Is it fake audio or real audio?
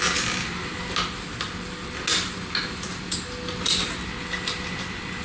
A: real